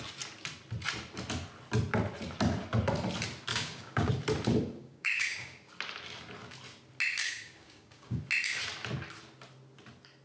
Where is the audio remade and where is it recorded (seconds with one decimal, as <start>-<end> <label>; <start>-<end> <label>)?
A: 0.0-3.5 recorded; 3.5-4.1 remade; 4.1-4.8 recorded; 4.8-5.7 remade; 5.7-7.2 recorded; 7.2-8.2 remade; 8.2-10.2 recorded

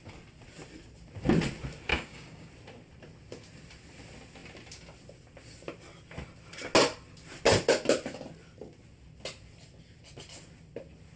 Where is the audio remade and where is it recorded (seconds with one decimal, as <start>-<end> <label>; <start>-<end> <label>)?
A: 0.0-1.9 recorded; 1.9-2.5 remade; 2.5-11.2 recorded

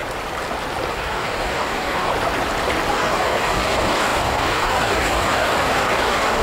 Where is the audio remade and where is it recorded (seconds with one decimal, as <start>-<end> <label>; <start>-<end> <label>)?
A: 0.0-0.9 recorded; 0.9-2.1 remade; 2.1-2.9 recorded; 2.9-6.4 remade

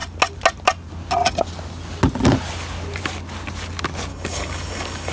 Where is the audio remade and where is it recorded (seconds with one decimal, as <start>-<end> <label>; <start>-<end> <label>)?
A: 0.0-4.1 recorded; 4.1-5.1 remade

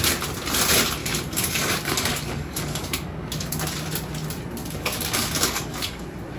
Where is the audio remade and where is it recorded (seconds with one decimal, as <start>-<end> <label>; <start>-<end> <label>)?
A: 0.0-1.0 recorded; 1.0-3.5 remade; 3.5-4.6 recorded; 4.6-6.0 remade; 6.0-6.4 recorded

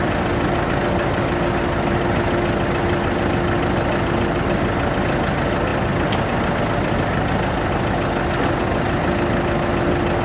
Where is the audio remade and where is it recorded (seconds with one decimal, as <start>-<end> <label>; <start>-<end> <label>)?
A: 0.0-10.2 recorded